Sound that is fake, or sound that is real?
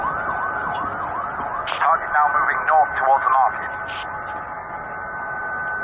real